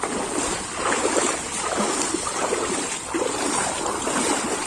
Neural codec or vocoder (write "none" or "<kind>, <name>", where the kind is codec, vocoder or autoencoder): none